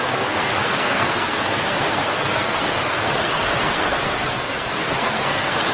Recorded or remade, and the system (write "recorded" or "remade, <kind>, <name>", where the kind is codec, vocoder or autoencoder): remade, codec, SNAC